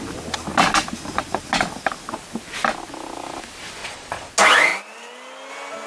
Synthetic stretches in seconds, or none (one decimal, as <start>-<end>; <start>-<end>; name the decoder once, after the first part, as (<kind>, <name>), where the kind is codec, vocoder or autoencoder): 3.8-4.3 (vocoder, Vocos)